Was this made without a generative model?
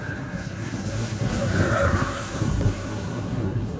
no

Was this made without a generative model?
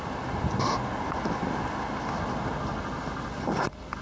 yes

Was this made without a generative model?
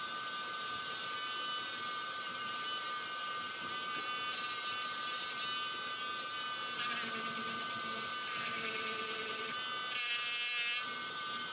yes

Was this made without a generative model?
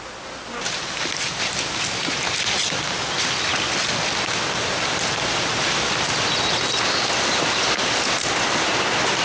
yes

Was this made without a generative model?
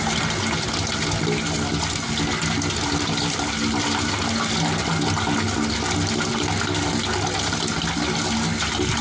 yes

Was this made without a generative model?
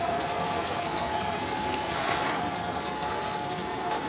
no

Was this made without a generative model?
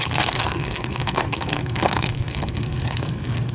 no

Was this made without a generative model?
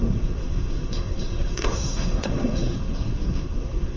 no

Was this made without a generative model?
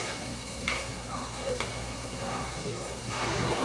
no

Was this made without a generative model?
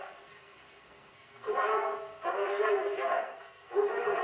no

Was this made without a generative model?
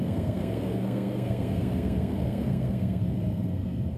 no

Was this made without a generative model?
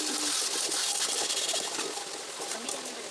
yes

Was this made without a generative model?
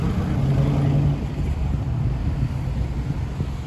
yes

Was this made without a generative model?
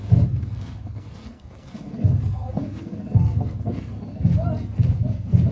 no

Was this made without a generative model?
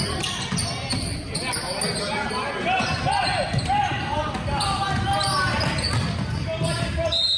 yes